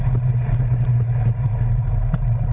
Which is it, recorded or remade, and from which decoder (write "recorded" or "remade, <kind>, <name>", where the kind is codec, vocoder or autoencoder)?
recorded